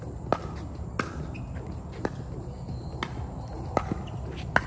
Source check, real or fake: real